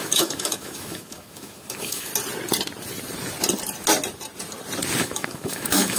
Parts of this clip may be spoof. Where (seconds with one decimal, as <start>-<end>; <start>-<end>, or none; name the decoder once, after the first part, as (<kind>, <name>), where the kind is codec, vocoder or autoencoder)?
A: 0.0-2.1 (autoencoder, DAC-VAE); 5.0-6.0